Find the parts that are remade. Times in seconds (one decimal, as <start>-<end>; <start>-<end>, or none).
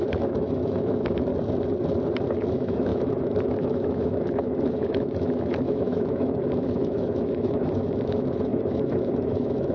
0.0-1.3; 2.5-9.7